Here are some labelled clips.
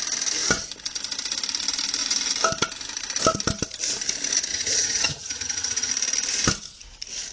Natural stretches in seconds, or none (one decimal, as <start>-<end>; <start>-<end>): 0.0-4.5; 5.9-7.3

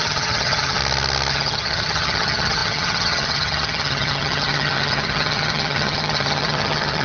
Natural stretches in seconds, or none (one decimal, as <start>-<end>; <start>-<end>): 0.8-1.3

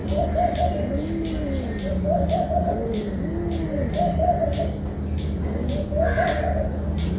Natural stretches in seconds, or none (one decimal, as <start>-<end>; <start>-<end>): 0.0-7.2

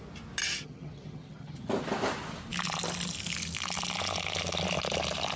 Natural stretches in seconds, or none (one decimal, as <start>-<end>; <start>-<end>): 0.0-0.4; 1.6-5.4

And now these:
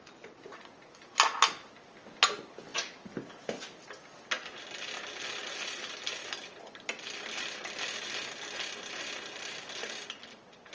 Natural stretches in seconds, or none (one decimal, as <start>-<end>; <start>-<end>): 0.0-10.7

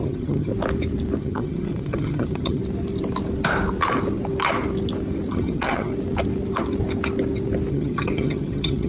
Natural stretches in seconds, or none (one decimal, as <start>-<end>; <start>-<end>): 0.5-1.2; 2.6-5.3; 5.9-7.7

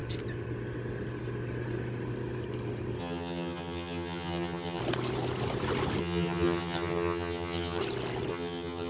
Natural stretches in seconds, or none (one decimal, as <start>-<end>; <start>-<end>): 0.0-3.0; 4.8-6.0; 7.8-8.3

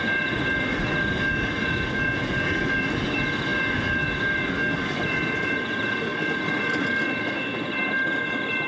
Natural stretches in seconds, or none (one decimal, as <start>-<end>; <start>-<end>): 0.0-8.7